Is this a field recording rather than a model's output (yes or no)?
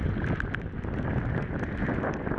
yes